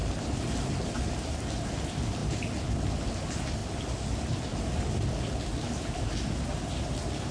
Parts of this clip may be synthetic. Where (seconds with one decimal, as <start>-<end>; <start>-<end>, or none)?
none